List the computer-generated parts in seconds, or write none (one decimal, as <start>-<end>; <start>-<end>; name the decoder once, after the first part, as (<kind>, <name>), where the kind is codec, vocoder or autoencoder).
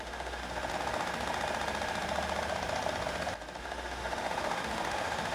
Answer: 0.0-0.4 (autoencoder, DAC-VAE); 3.6-5.3